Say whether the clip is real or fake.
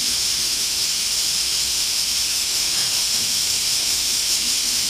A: fake